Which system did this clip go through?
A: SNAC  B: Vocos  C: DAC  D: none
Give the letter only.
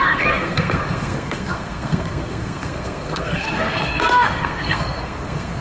A